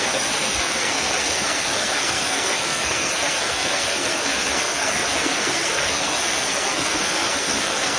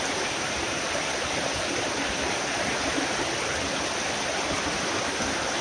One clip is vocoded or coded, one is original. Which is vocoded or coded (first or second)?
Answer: first